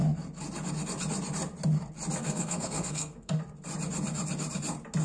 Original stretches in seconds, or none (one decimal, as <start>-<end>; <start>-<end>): 0.0-2.2; 3.4-5.0

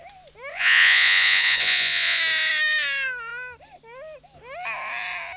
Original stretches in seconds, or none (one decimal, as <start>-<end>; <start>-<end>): 0.0-0.5; 2.2-5.4

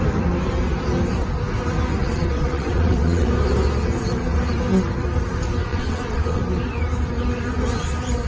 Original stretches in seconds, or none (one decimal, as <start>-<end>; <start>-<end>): 0.0-2.0; 3.3-5.7; 6.4-8.3

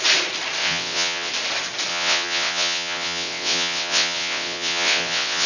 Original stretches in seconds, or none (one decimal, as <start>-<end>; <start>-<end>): 0.0-0.6; 1.3-1.9

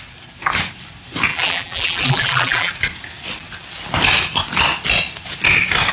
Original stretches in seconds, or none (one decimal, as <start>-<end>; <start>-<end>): 0.0-1.3; 2.7-5.9

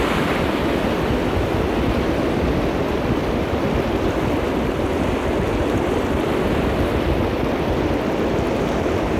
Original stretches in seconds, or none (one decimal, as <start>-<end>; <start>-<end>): 0.0-9.2

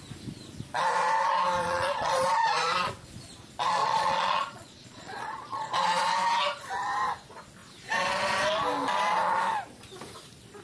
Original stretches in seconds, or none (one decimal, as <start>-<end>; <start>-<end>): 0.0-1.6; 2.9-3.8; 6.1-10.6

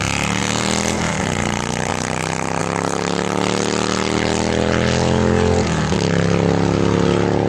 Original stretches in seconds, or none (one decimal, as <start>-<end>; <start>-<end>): 0.0-7.5